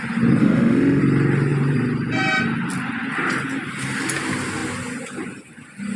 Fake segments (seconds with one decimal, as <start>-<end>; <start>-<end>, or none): 0.4-1.0